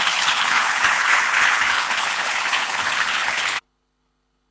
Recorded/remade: remade